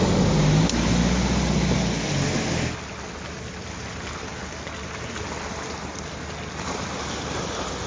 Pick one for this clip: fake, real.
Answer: real